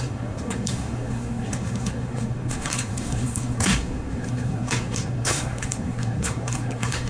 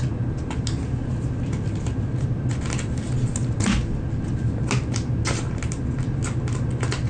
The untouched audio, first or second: second